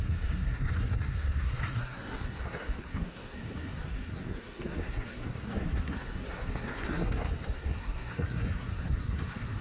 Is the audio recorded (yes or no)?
no